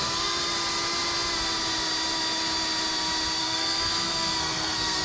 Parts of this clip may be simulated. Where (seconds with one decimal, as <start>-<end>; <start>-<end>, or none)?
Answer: 0.0-0.4; 3.4-5.0